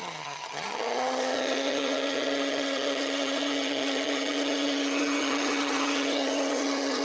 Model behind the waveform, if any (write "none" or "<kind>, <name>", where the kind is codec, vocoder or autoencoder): vocoder, HiFi-GAN